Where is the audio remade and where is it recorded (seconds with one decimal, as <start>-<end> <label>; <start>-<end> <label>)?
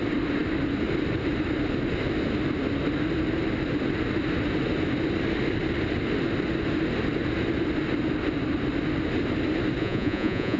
0.0-9.8 recorded; 9.8-10.6 remade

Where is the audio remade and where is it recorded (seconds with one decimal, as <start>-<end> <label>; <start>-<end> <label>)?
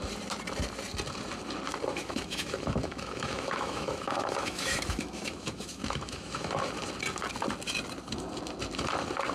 0.0-1.9 recorded; 1.9-6.5 remade; 6.5-9.3 recorded